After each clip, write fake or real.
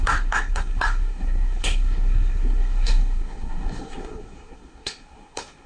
fake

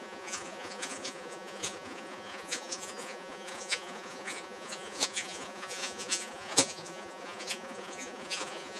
fake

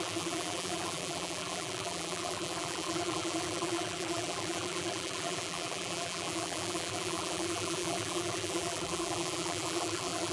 fake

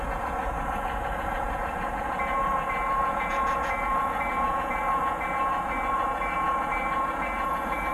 fake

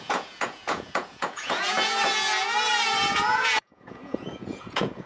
fake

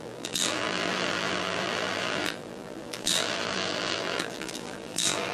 fake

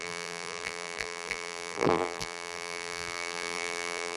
fake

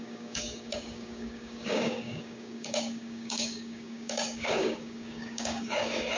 fake